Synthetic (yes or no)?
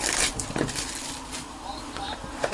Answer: no